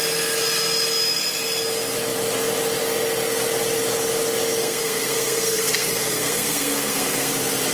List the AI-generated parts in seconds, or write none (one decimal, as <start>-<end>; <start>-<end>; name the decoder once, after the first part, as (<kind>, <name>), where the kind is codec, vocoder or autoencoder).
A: 4.6-7.3 (codec, SNAC)